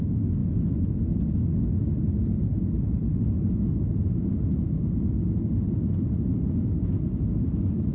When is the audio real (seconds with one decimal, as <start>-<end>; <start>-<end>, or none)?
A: 0.0-0.4; 1.2-2.4; 3.5-6.3; 6.9-7.9